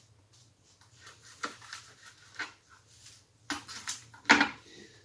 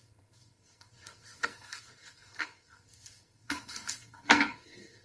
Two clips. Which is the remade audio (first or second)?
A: second